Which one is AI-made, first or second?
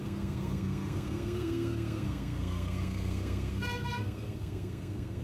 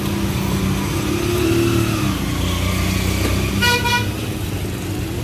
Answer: first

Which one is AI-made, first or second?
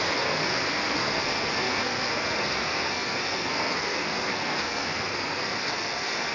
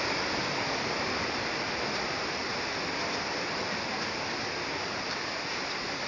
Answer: first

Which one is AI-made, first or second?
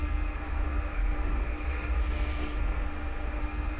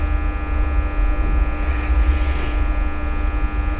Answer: first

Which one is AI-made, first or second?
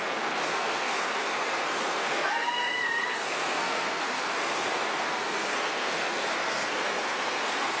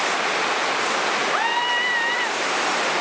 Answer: first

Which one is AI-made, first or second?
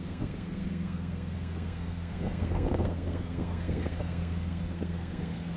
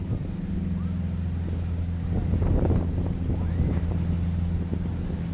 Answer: first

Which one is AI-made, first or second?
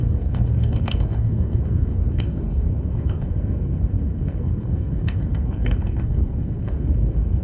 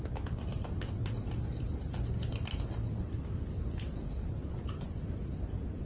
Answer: first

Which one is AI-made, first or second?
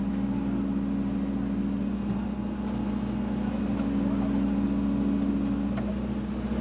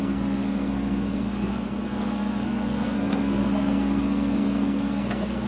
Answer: second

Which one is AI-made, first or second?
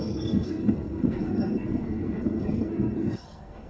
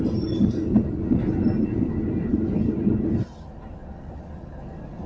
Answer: first